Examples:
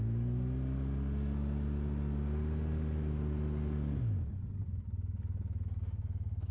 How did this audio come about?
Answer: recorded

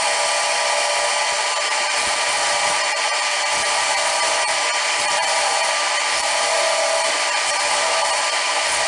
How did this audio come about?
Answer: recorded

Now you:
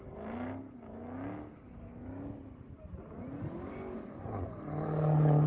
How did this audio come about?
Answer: recorded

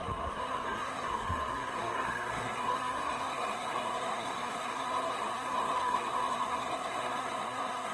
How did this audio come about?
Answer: remade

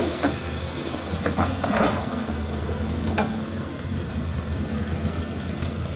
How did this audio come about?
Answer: remade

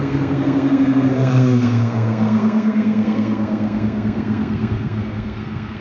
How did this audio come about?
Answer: remade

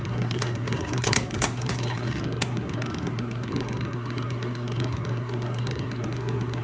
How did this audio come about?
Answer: remade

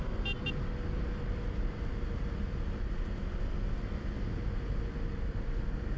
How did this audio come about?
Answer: recorded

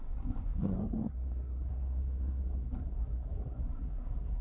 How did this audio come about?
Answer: remade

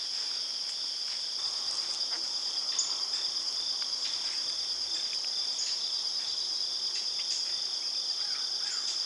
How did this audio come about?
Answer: recorded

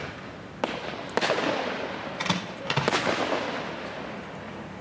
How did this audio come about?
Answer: recorded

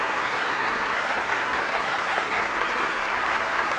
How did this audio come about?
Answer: remade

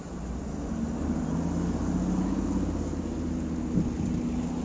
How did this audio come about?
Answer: recorded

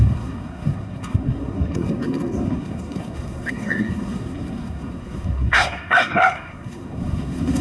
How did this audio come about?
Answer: remade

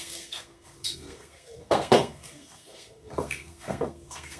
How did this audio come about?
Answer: remade